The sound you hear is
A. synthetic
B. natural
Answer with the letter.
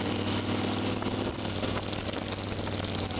B